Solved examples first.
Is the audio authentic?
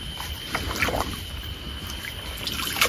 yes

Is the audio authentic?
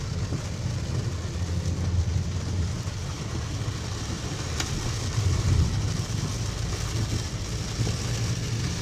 yes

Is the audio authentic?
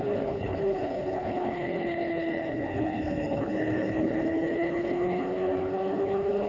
no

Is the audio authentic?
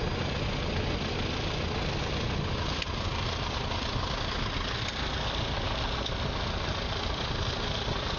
yes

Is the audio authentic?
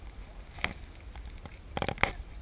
yes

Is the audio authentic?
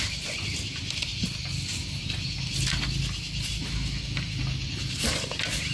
yes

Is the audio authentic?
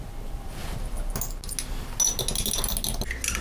yes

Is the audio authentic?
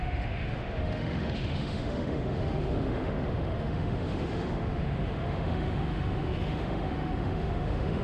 no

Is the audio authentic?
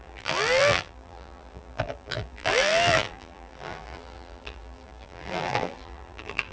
no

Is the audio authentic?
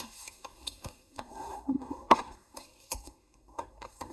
no